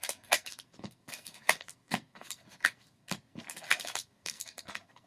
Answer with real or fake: fake